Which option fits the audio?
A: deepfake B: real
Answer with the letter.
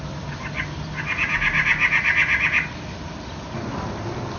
B